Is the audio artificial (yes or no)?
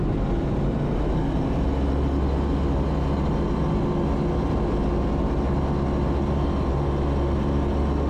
no